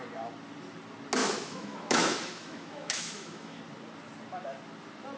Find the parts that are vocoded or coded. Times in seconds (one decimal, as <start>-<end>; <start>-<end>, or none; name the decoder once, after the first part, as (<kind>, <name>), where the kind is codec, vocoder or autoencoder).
1.2-3.6 (autoencoder, DAC-VAE)